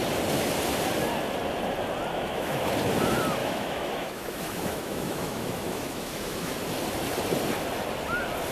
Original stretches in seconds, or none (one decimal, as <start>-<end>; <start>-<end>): 0.0-2.1; 2.7-3.4; 6.5-8.5

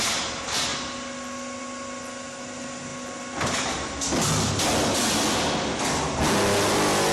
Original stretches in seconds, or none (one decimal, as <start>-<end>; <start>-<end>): 0.0-7.1

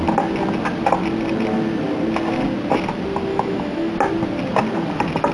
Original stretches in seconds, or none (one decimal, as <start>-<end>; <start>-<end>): 0.0-3.3; 3.9-5.3